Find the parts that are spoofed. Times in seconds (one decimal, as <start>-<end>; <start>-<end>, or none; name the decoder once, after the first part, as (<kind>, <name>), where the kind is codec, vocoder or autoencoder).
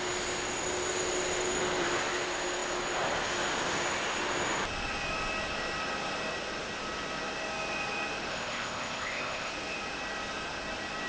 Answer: 8.3-9.5 (codec, ZipCodec)